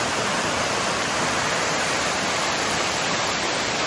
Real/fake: real